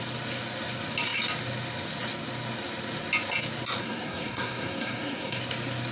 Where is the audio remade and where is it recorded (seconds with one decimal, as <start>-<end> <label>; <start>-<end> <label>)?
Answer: 0.0-3.8 recorded; 3.8-5.4 remade; 5.4-5.9 recorded